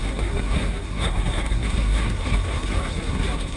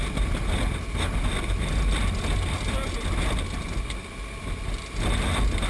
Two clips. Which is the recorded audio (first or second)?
second